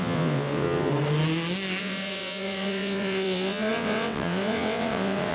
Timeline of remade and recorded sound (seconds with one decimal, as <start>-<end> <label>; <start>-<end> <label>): 0.0-0.9 remade; 0.9-1.8 recorded; 1.8-5.3 remade